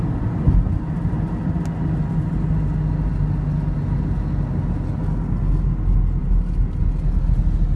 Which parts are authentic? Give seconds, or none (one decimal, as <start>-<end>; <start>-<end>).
0.0-7.8